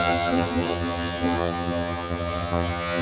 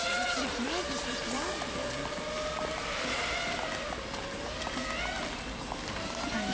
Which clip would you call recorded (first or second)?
second